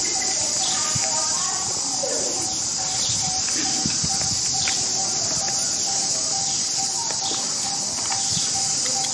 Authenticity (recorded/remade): recorded